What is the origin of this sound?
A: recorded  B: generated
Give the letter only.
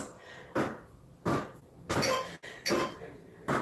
A